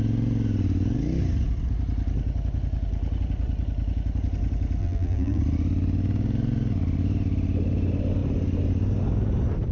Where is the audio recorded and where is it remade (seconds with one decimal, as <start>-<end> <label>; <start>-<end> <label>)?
0.0-4.8 recorded; 4.8-5.4 remade; 5.4-9.7 recorded